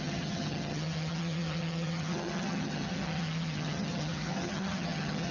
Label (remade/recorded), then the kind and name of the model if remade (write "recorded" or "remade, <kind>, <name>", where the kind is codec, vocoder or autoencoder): remade, vocoder, HiFi-GAN